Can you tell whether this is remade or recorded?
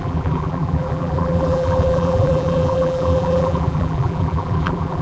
remade